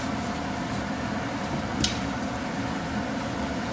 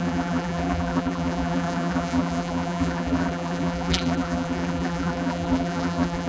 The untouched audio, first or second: first